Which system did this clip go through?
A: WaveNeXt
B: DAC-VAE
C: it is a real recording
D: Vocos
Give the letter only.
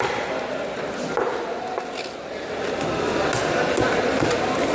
C